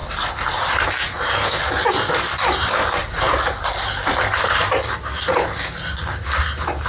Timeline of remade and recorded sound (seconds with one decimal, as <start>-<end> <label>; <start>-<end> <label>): 0.0-3.0 recorded; 3.0-6.4 remade; 6.4-6.9 recorded